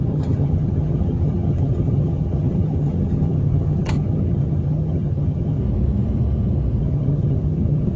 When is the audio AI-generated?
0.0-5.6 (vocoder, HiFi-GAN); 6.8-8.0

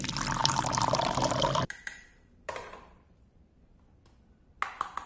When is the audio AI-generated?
0.4-3.5 (vocoder, BigVGAN v2)

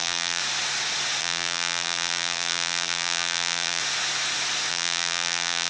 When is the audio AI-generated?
0.0-0.4 (vocoder, BigVGAN v2); 1.2-3.8; 4.7-5.7

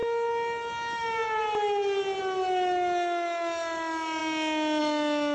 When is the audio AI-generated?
none

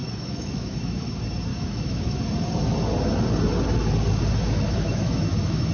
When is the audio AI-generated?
0.0-1.1 (autoencoder, DAC-VAE); 1.5-2.2; 4.9-5.7

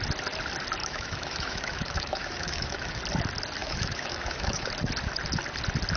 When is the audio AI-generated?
0.8-3.0 (autoencoder, DAC-VAE); 3.6-4.7

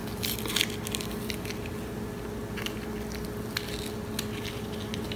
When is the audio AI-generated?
none